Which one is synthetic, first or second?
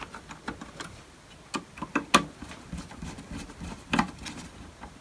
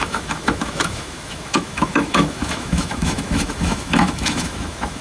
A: second